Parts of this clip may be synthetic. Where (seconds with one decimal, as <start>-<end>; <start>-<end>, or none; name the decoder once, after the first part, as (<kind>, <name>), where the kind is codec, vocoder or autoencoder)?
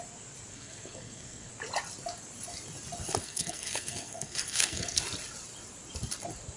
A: 0.5-1.5 (codec, SNAC); 3.2-5.0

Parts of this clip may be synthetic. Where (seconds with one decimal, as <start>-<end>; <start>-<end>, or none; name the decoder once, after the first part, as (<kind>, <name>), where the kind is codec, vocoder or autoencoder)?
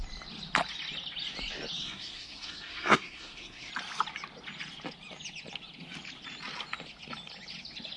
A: 1.8-3.7 (codec, SNAC)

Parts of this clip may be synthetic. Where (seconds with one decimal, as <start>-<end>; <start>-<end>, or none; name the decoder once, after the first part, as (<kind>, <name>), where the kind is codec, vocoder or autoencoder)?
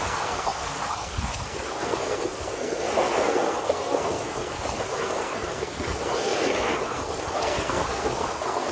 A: 0.0-8.7 (codec, SNAC)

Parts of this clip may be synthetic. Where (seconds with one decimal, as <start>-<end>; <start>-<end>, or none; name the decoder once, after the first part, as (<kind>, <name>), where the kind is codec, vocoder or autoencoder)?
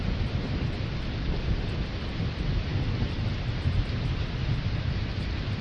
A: 0.0-2.7 (vocoder, BigVGAN v2); 3.3-5.6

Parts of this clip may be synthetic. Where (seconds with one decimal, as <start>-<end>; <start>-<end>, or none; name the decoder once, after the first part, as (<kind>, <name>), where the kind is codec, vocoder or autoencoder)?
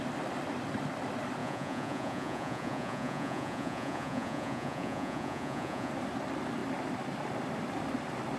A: 1.4-5.9 (vocoder, Vocos)